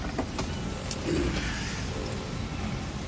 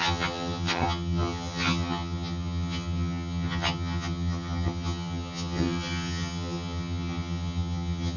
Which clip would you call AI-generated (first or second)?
second